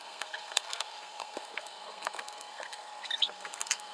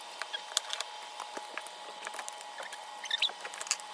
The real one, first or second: second